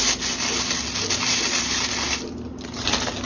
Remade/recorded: recorded